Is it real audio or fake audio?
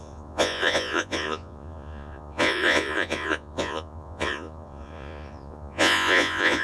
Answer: fake